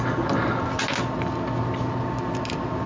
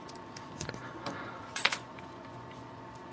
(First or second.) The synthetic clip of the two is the second